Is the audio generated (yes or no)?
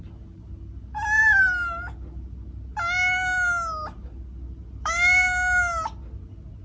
no